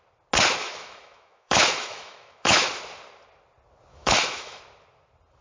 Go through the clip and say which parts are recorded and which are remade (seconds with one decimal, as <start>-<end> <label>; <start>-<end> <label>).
0.0-0.6 recorded; 0.6-2.7 remade; 2.7-3.9 recorded; 3.9-4.6 remade; 4.6-5.4 recorded